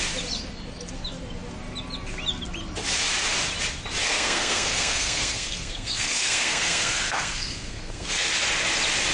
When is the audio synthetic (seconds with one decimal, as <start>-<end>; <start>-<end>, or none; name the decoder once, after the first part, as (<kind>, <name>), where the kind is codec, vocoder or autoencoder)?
4.0-8.3 (codec, SNAC)